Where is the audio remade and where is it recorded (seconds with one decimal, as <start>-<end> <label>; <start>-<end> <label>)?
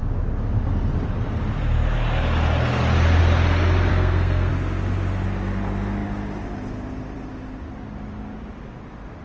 0.0-3.9 recorded; 3.9-4.5 remade; 4.5-9.2 recorded